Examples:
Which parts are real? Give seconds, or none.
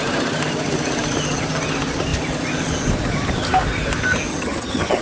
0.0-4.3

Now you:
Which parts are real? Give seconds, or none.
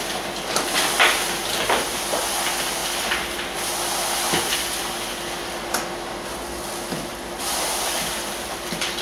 0.0-9.0